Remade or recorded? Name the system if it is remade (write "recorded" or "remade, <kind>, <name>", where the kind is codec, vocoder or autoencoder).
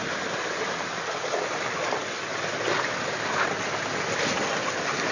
recorded